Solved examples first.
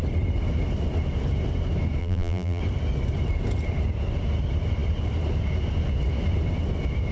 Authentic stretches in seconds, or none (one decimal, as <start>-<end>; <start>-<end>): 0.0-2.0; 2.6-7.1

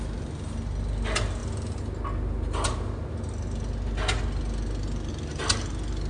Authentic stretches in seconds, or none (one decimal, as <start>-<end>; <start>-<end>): 0.0-6.1

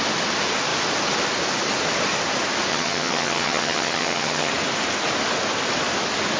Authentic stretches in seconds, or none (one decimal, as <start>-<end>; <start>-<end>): 0.0-2.7; 4.5-6.4

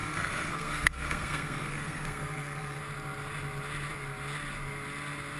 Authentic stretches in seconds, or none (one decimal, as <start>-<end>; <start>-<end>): 2.8-5.4